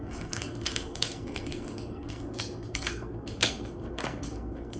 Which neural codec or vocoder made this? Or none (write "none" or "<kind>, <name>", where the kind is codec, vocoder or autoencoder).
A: codec, SNAC